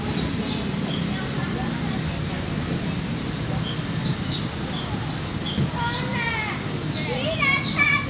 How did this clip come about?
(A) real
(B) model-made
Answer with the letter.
A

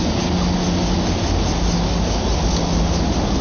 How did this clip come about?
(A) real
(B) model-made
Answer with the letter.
A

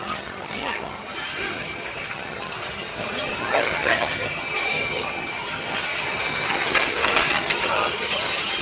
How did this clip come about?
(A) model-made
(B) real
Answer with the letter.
A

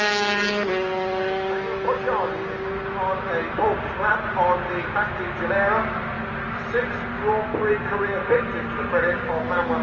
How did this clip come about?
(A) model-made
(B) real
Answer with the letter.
B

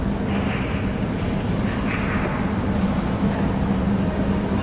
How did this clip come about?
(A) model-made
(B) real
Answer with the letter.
B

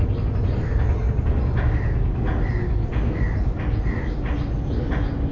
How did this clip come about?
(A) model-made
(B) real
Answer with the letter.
B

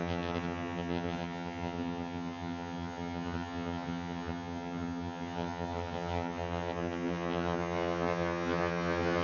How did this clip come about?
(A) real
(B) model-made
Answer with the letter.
B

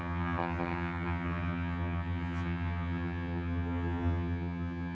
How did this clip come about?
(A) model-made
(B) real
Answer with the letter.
A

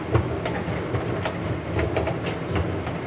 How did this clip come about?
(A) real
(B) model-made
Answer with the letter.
A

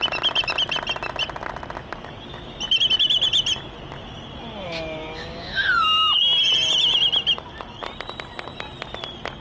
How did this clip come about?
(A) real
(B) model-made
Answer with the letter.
A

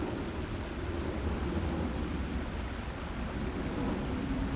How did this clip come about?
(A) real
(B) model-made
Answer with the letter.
A